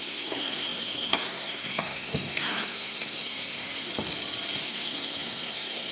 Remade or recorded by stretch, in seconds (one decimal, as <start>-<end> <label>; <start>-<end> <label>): 0.0-3.9 remade; 3.9-4.6 recorded; 4.6-5.9 remade